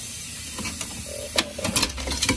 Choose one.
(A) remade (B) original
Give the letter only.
B